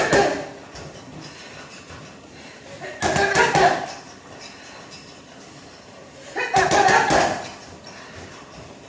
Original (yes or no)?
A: yes